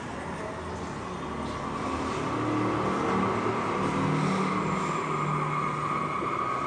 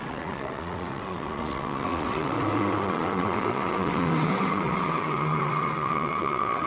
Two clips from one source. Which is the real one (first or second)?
first